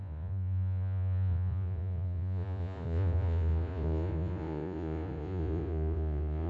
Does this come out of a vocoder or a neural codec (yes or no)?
yes